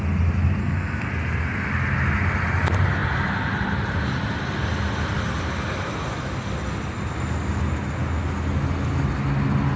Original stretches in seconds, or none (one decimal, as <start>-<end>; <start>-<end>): 0.0-0.6; 1.1-9.8